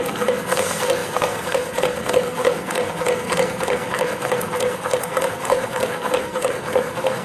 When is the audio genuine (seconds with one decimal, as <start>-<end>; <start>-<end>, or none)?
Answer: none